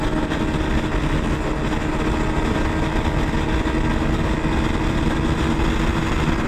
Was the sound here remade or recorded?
recorded